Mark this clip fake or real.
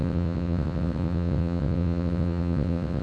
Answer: fake